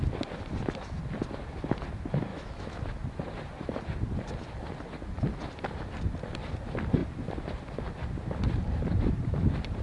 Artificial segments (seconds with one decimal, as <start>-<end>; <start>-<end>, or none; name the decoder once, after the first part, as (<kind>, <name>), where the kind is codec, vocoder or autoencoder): 2.3-2.8 (autoencoder, DAC-VAE)